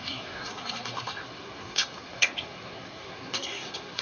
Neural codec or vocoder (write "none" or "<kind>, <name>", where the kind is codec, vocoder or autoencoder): codec, SNAC